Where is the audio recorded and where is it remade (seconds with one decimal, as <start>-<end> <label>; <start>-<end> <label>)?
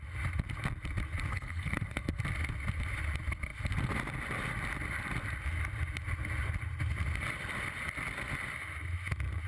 0.0-1.3 recorded; 1.3-2.2 remade; 2.2-9.5 recorded